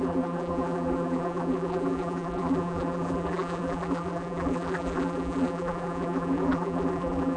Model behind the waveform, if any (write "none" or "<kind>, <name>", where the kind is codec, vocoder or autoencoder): vocoder, BigVGAN v2